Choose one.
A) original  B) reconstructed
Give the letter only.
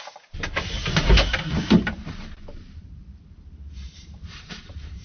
B